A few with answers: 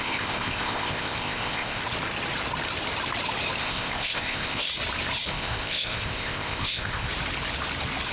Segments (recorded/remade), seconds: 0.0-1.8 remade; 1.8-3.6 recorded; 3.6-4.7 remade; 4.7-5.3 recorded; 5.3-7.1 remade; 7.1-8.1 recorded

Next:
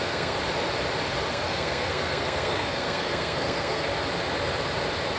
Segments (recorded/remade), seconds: 0.0-0.4 remade; 0.4-1.3 recorded; 1.3-3.9 remade; 3.9-5.2 recorded

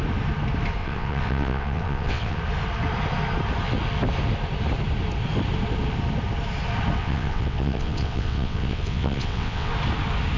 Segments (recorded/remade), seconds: 0.0-0.8 recorded; 0.8-2.4 remade; 2.4-7.0 recorded; 7.0-9.7 remade; 9.7-10.4 recorded

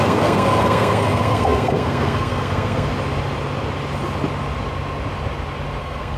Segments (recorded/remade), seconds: 0.0-2.9 remade; 2.9-5.8 recorded; 5.8-6.2 remade

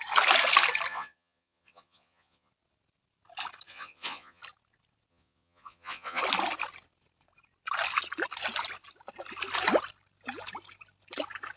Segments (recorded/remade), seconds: 0.0-0.9 recorded; 0.9-2.5 remade; 2.5-3.7 recorded; 3.7-4.4 remade; 4.4-5.1 recorded; 5.1-6.2 remade; 6.2-11.6 recorded

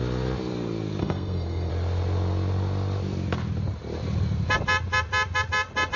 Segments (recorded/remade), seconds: 0.0-1.0 recorded; 1.0-1.7 remade; 1.7-6.0 recorded

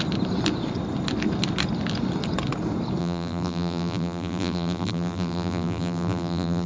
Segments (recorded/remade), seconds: 0.0-3.0 recorded; 3.0-6.7 remade